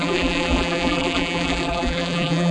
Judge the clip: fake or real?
fake